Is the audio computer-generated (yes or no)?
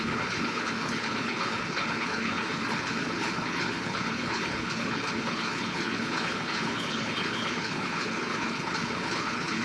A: yes